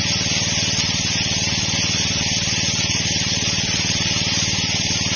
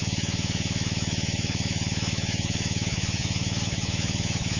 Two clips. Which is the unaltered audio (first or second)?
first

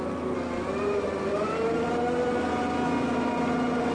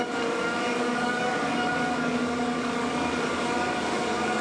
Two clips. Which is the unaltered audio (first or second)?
first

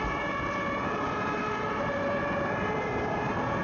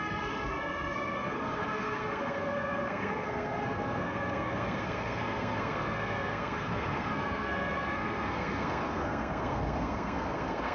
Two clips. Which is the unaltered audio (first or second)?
first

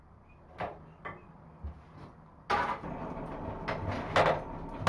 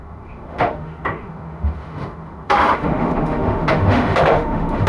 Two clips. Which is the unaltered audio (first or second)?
first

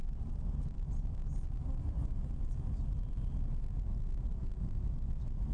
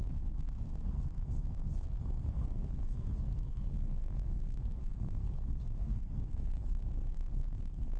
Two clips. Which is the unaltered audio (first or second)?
first